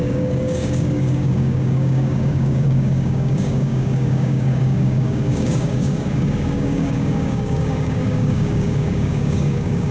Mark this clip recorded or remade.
remade